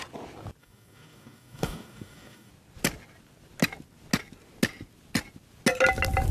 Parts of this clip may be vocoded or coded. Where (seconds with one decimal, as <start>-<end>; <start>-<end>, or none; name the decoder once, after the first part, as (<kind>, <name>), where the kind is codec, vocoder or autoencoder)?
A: 0.6-2.5 (codec, DAC)

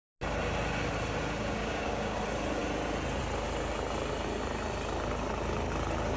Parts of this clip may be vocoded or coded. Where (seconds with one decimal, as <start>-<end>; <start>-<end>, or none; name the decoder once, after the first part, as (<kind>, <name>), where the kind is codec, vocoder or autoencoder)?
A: 1.6-2.2 (codec, DAC)

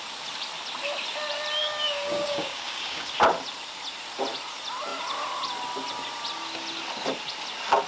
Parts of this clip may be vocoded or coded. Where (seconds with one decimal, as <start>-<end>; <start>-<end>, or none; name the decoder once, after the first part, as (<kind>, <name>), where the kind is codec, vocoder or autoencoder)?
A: 1.6-3.1 (codec, DAC)

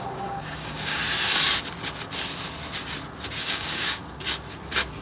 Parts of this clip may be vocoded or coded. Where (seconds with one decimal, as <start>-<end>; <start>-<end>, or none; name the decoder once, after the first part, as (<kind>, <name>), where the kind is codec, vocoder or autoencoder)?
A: 0.0-1.0 (codec, DAC); 3.4-4.0